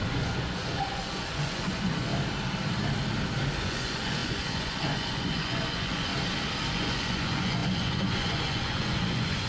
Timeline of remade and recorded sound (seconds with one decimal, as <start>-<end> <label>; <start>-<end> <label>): 0.0-2.1 remade; 2.1-3.6 recorded; 3.6-6.1 remade; 6.1-6.7 recorded; 6.7-9.5 remade